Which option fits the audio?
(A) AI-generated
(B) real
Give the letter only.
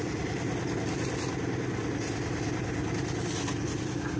B